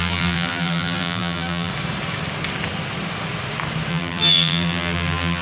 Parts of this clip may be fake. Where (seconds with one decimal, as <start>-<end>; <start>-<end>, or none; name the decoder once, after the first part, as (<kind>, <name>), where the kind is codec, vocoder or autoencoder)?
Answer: 0.0-1.7 (vocoder, BigVGAN v2); 3.9-5.4